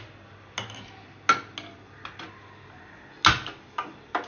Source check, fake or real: real